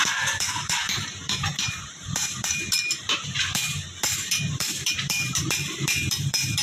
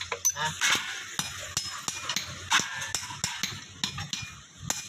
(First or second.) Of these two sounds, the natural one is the second